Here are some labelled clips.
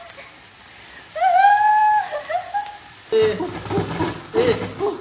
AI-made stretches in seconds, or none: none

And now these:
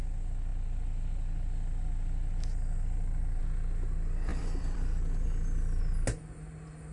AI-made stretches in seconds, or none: 4.3-5.8 (vocoder, BigVGAN v2)

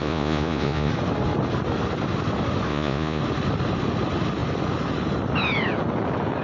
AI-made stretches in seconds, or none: 0.0-0.9 (vocoder, Vocos); 2.7-3.2

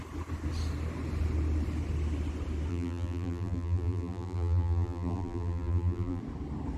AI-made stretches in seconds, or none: 2.7-6.2 (vocoder, BigVGAN v2)

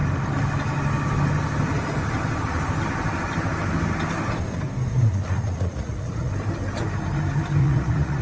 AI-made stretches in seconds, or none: 4.9-6.3 (vocoder, Vocos); 7.6-8.2

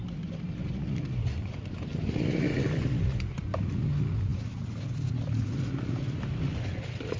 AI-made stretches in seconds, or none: none

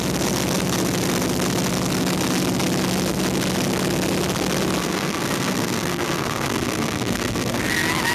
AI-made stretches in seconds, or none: 4.8-7.6 (codec, SNAC)

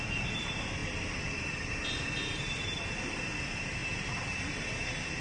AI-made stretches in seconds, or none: 0.8-3.2 (vocoder, BigVGAN v2); 3.8-4.5